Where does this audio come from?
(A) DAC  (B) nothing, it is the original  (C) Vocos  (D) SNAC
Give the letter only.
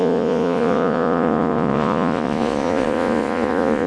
C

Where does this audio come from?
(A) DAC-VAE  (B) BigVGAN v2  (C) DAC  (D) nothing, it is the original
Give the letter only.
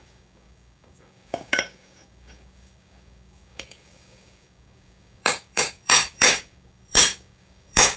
C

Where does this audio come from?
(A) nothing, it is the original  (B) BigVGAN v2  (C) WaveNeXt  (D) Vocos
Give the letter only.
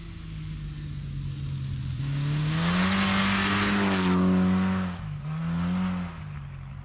A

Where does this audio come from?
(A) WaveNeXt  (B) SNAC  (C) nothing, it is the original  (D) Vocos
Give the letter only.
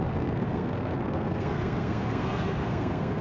B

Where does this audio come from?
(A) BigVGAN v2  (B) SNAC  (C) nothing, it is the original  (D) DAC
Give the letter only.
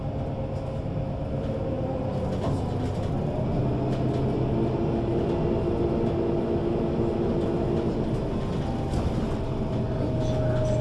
C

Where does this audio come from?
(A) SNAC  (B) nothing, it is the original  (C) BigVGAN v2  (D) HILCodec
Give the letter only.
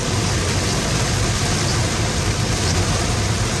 B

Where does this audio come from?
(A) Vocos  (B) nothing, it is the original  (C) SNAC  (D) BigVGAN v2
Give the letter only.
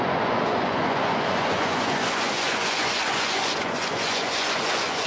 A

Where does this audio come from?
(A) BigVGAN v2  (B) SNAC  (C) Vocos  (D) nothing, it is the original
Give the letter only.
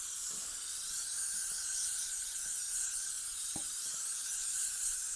A